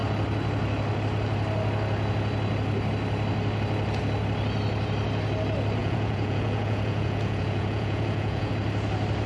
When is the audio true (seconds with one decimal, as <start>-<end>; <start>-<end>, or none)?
0.0-5.8; 8.5-9.3